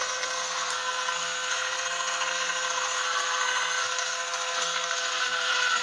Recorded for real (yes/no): no